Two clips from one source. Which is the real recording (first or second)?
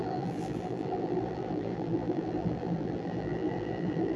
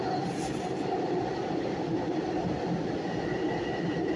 second